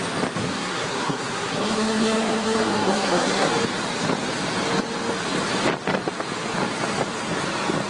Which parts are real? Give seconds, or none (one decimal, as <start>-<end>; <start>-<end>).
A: 0.0-0.4; 3.5-7.9